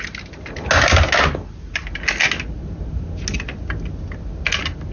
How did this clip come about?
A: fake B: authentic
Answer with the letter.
B